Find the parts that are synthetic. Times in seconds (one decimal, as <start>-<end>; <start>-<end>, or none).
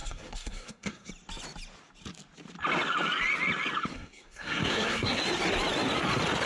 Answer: 0.0-1.1; 3.9-5.2